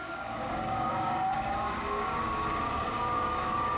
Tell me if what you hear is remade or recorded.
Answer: remade